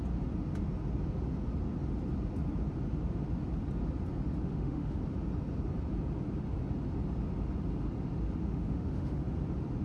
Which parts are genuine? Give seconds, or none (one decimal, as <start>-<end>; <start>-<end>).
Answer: 0.0-4.4; 5.0-8.4; 9.2-9.8